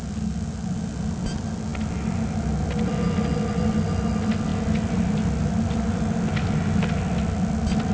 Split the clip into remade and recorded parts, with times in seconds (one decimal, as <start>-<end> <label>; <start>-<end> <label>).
0.0-7.9 recorded